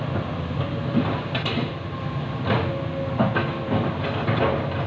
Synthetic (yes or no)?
no